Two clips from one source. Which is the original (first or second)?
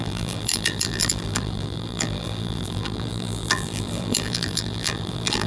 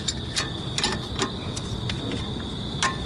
second